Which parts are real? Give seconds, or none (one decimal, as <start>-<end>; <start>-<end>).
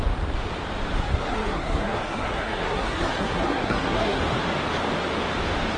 0.0-1.0; 4.2-5.8